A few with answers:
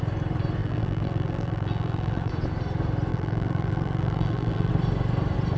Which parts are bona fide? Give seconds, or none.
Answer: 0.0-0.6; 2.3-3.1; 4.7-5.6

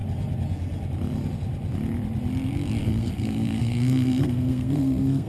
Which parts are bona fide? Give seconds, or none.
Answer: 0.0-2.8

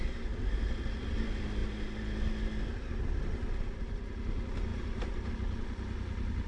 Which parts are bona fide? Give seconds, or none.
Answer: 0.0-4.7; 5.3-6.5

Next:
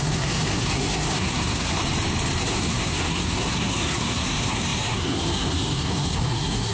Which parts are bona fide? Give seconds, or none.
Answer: 1.8-2.4